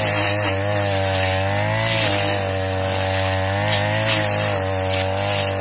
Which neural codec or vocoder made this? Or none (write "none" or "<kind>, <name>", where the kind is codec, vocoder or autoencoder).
none